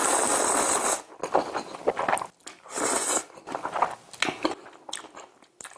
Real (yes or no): yes